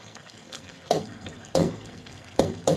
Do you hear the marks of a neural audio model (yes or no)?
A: yes